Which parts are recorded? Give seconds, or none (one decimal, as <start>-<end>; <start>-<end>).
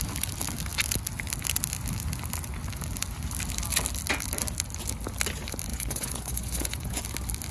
0.0-5.7; 7.0-7.5